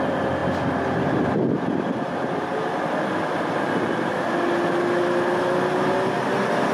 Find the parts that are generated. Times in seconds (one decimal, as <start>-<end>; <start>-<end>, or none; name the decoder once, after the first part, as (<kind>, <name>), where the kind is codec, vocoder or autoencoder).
none